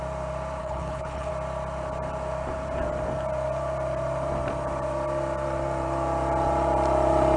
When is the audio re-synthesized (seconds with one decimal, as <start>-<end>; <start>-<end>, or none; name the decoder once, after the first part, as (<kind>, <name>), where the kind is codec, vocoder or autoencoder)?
0.6-1.3 (codec, HILCodec)